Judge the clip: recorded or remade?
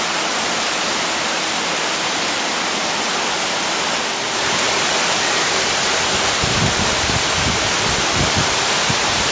recorded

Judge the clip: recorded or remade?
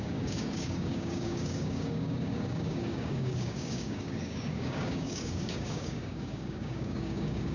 remade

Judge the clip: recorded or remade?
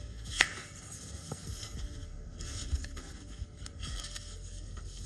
remade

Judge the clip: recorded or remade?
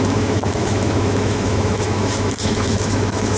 remade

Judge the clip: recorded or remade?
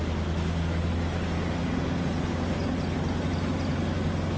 recorded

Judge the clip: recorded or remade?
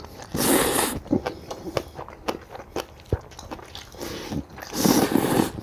recorded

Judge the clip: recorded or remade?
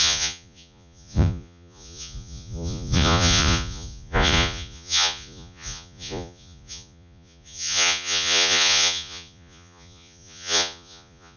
remade